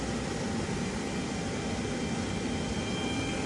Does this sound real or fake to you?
real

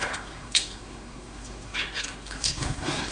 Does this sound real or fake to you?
fake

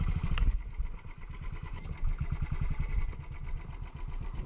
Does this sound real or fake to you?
real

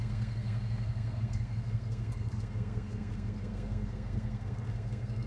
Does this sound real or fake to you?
fake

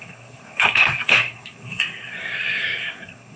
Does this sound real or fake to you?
fake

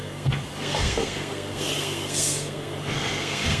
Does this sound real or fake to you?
fake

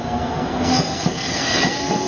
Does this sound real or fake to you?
fake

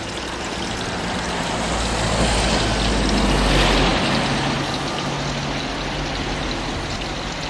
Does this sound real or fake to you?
real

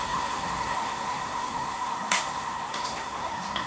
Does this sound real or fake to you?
fake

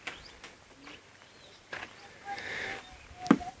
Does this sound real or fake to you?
real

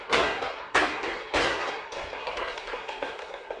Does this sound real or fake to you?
fake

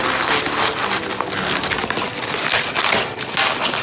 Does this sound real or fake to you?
real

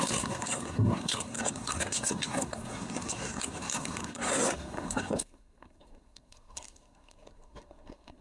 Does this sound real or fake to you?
fake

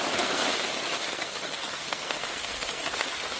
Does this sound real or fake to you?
fake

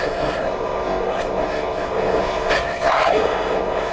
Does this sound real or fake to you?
fake